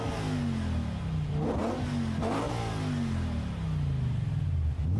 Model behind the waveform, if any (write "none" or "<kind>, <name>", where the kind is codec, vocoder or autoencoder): none